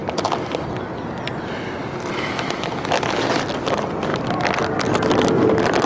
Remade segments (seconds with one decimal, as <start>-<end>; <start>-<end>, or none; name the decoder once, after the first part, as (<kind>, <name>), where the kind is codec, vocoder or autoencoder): none